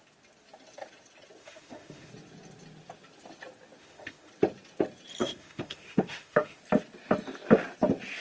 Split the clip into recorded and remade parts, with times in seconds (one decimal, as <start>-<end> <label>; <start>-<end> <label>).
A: 0.0-1.4 recorded; 1.4-2.1 remade; 2.1-3.8 recorded; 3.8-4.3 remade; 4.3-5.2 recorded; 5.2-6.6 remade; 6.6-8.2 recorded